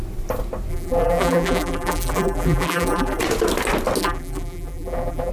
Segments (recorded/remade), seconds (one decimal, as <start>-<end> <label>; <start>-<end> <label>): 0.0-0.7 recorded; 0.7-3.2 remade; 3.2-4.0 recorded; 4.0-5.3 remade